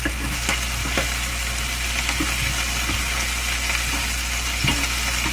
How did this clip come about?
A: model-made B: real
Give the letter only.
B